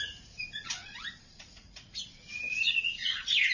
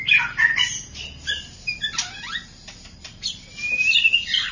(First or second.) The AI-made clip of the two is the first